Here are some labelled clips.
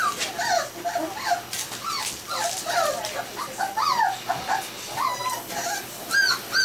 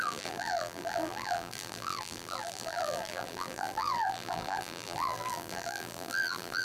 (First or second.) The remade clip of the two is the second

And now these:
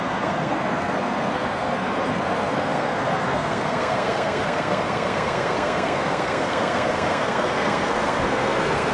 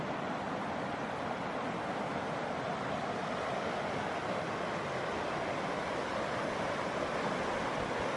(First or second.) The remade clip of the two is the first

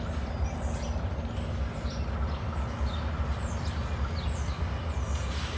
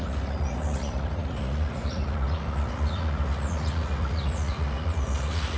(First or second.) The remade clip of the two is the second